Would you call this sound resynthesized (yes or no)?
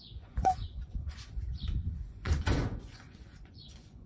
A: yes